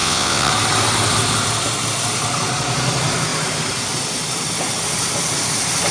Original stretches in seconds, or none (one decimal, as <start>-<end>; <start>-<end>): 0.5-5.9